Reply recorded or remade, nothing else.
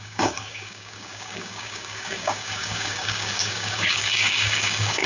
remade